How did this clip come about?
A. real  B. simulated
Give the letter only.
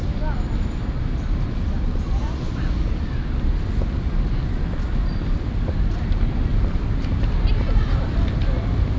A